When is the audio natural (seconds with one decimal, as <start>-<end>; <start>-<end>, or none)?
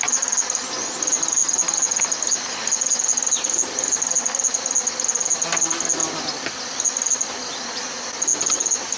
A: 0.0-9.0